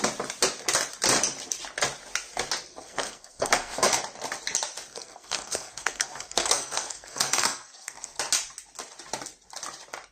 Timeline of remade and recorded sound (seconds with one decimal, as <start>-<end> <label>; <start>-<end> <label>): 0.0-2.7 recorded; 2.7-4.0 remade; 4.0-4.9 recorded; 4.9-8.2 remade; 8.2-10.1 recorded

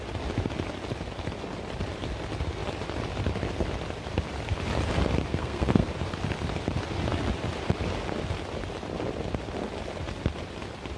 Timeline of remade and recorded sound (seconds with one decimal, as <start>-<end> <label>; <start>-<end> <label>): 0.0-5.3 recorded; 5.3-5.9 remade; 5.9-11.0 recorded

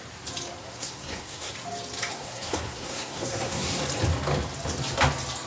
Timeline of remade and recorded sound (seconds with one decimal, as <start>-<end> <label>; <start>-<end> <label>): 0.0-0.6 recorded; 0.6-1.5 remade; 1.5-2.1 recorded; 2.1-3.8 remade; 3.8-5.5 recorded

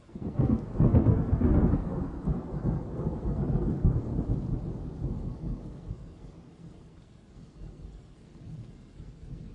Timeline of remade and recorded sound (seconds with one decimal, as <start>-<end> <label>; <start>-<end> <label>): 0.0-4.1 remade; 4.1-4.7 recorded; 4.7-9.5 remade

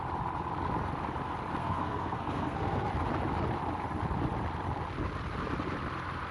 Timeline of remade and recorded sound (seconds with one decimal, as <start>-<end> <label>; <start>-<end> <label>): 0.0-1.6 recorded; 1.6-2.9 remade; 2.9-6.3 recorded